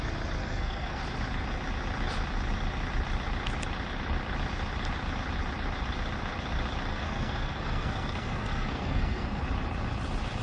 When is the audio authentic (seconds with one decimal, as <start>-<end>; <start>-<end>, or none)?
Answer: 0.0-0.4; 1.0-6.9; 9.4-10.4